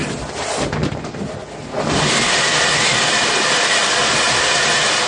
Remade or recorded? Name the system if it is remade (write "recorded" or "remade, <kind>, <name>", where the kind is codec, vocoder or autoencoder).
recorded